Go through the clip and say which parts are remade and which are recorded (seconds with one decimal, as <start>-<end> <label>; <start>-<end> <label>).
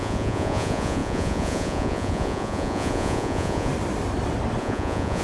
0.0-3.7 remade; 3.7-4.6 recorded; 4.6-5.2 remade